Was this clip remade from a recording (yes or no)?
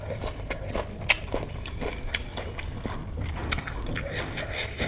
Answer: no